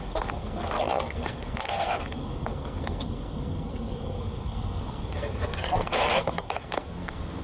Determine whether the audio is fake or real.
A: fake